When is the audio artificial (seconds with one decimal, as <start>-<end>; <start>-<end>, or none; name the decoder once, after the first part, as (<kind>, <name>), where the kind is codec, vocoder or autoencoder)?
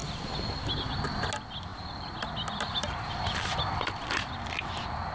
none